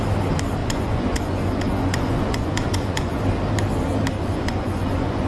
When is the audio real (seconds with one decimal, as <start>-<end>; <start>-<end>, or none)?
0.0-0.6; 3.2-4.2

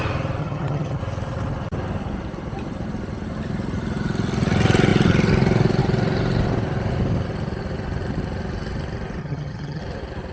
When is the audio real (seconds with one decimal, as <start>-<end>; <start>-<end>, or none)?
0.0-0.4; 1.0-9.2; 9.8-10.3

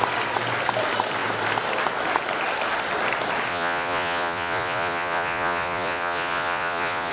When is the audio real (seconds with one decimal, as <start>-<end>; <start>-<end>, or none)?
0.0-3.5

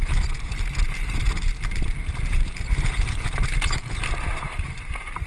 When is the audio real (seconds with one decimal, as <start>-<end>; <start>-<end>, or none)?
0.0-5.3

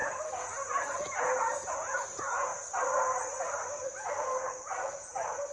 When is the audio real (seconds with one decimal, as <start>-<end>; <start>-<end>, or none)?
2.5-4.1

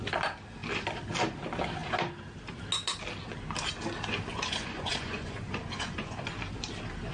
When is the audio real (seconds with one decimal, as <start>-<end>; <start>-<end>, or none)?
0.0-4.3; 6.2-7.1

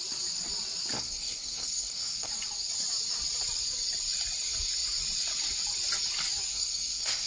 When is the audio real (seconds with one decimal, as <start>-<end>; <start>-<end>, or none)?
0.0-0.9; 2.3-6.5